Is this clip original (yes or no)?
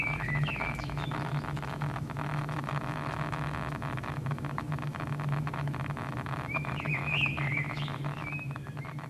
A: no